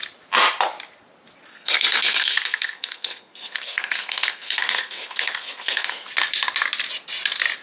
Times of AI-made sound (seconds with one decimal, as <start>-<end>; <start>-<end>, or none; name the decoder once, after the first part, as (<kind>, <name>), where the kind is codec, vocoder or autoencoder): 1.5-6.1 (codec, SNAC)